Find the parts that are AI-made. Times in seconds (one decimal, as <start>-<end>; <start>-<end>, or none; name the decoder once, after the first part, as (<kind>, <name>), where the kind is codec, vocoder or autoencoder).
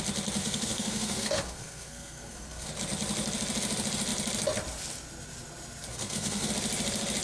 0.4-2.7 (codec, SNAC); 5.9-6.5